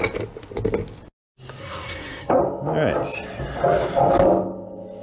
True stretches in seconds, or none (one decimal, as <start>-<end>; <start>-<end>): 0.0-1.6; 2.4-5.0